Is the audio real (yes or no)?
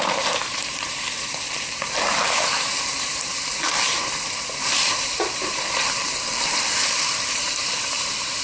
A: no